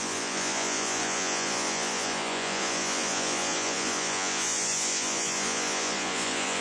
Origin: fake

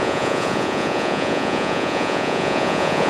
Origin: fake